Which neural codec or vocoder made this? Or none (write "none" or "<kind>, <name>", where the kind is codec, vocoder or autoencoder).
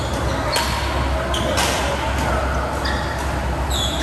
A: none